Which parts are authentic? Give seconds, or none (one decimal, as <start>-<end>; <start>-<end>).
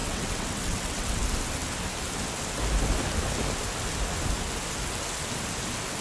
1.2-6.0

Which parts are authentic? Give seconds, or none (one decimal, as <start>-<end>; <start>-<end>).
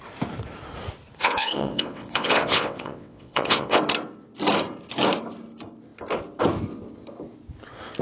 0.0-1.2; 3.8-8.0